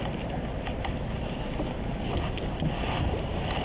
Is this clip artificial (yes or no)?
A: yes